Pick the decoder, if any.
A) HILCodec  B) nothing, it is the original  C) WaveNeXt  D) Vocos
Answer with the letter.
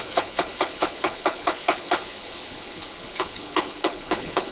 A